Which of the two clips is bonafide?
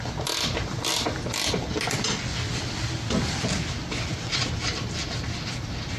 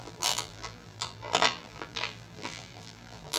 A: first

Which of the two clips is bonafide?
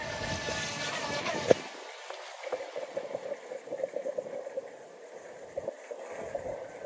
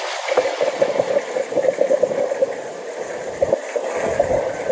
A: first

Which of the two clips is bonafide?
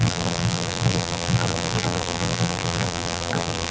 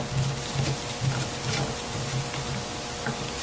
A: second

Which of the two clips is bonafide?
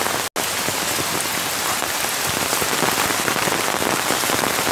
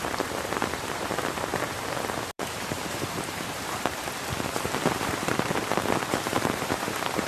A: first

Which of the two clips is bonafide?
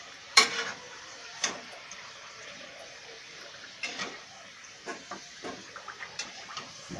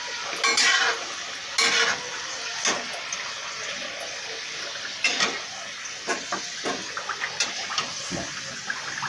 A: second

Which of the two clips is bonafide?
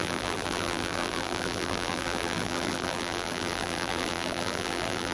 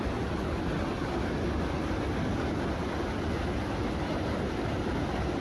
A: second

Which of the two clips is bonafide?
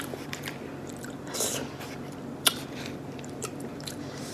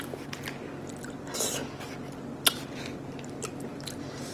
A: second